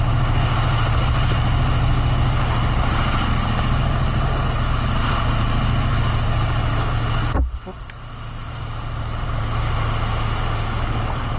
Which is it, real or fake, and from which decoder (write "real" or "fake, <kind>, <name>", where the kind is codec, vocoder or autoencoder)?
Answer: real